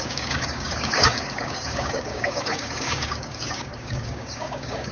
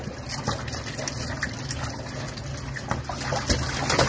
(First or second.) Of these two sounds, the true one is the second